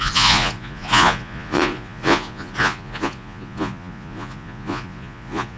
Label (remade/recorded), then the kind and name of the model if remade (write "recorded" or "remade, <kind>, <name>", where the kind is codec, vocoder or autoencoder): remade, vocoder, Vocos